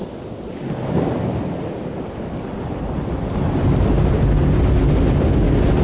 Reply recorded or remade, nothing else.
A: recorded